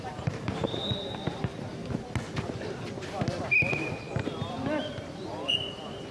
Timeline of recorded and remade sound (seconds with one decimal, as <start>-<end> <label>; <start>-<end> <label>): 0.0-1.5 remade; 1.5-3.7 recorded; 3.7-6.1 remade